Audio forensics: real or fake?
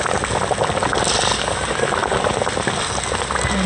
real